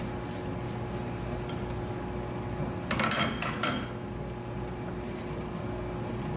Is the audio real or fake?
real